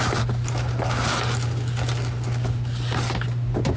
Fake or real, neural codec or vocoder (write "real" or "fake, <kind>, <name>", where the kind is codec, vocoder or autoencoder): real